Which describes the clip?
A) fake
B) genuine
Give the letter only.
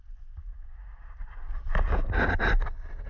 B